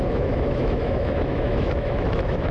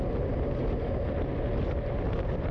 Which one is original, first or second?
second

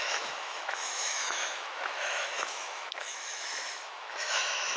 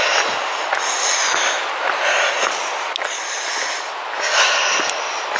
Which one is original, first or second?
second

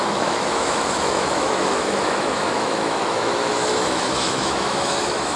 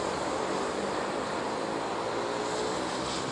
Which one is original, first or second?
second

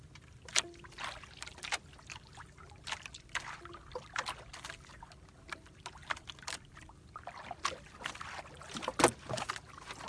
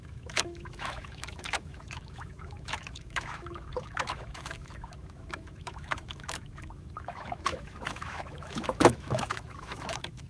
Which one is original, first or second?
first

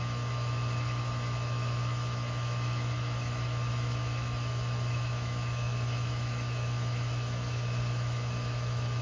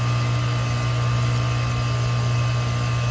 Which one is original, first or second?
second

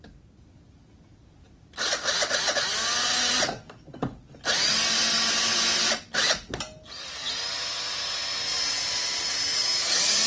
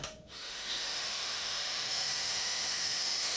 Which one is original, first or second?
first